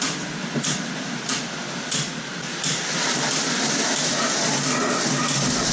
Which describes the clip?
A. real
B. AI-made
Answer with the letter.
A